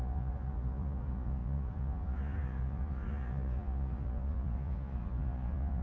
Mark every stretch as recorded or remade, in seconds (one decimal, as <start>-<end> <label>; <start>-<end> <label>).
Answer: 0.0-5.8 remade

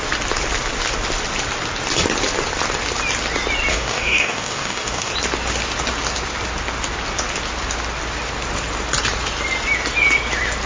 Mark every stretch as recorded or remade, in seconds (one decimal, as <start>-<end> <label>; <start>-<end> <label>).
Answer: 0.0-3.7 recorded; 3.7-5.1 remade; 5.1-10.7 recorded

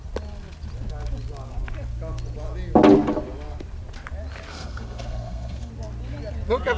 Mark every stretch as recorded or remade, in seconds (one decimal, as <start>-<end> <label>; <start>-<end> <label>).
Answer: 0.0-4.5 recorded; 4.5-5.7 remade; 5.7-6.8 recorded

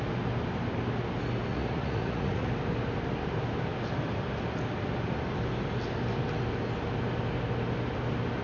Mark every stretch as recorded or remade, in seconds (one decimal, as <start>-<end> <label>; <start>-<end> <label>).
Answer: 0.0-1.5 recorded; 1.5-2.5 remade; 2.5-8.4 recorded

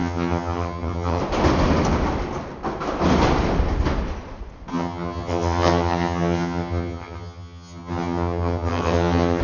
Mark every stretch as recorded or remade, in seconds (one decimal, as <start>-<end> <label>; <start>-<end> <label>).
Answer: 0.0-1.2 remade; 1.2-4.7 recorded; 4.7-9.4 remade

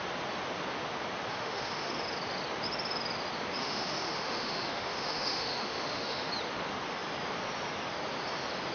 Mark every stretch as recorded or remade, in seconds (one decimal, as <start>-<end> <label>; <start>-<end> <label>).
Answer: 0.0-1.3 recorded; 1.3-1.9 remade; 1.9-3.6 recorded; 3.6-6.3 remade; 6.3-8.7 recorded

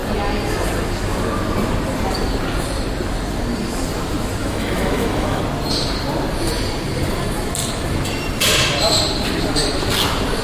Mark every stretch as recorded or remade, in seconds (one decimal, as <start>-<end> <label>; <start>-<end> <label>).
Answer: 0.0-4.4 recorded; 4.4-5.4 remade; 5.4-10.4 recorded

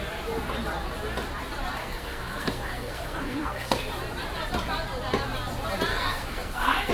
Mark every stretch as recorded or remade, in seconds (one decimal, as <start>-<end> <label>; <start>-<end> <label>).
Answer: 0.0-1.8 recorded; 1.8-3.9 remade; 3.9-5.9 recorded; 5.9-6.9 remade